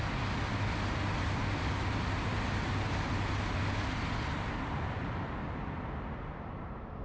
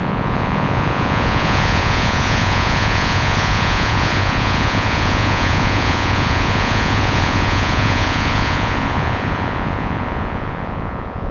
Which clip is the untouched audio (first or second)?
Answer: first